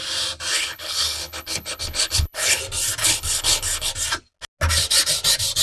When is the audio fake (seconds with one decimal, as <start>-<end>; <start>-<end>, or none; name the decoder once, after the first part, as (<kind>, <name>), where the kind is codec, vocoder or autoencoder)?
0.5-2.6 (codec, HILCodec); 3.0-3.9